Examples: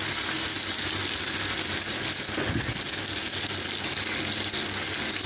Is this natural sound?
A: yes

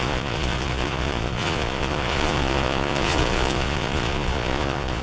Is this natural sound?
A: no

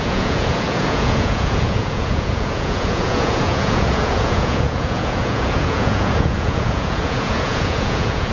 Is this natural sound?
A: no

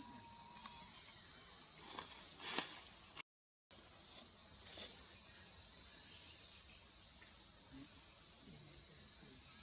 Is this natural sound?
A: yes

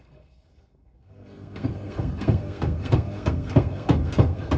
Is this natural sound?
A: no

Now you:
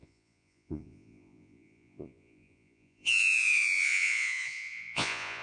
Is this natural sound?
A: no